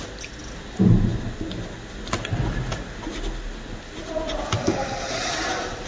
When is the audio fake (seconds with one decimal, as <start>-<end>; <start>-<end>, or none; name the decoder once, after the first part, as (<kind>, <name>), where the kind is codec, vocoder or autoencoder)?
none